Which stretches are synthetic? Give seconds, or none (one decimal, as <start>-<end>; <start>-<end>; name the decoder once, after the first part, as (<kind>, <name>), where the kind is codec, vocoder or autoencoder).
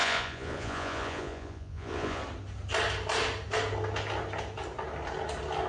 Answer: 0.0-2.2 (vocoder, Vocos)